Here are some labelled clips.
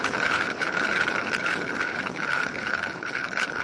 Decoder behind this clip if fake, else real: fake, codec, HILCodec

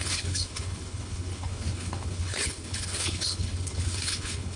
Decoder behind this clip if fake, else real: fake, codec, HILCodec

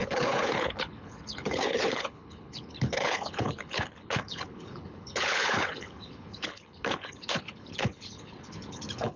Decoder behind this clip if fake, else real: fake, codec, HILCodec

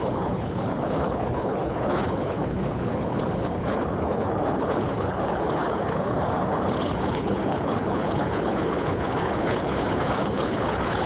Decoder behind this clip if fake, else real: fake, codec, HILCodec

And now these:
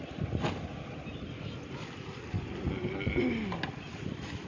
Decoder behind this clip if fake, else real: real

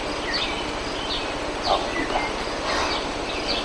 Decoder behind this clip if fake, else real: real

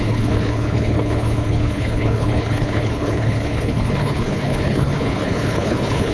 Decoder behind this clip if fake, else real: fake, codec, HILCodec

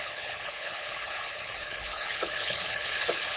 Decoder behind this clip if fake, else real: fake, codec, HILCodec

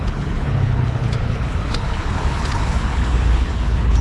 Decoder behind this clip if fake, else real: fake, codec, HILCodec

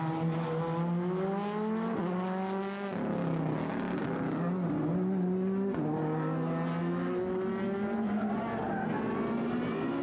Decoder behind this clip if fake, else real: real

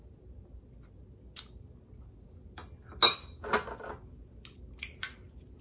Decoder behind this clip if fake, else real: real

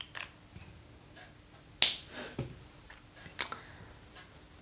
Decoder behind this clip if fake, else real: real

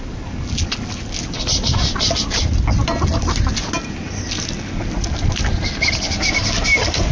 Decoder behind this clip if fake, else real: real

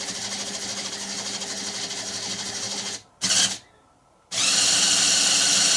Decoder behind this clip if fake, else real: real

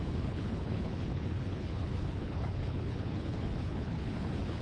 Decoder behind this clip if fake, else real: fake, codec, HILCodec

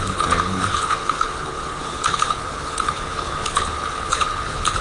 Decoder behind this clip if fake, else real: fake, codec, HILCodec